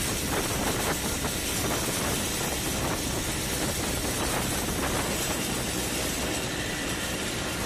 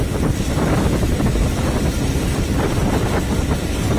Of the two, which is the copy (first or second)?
second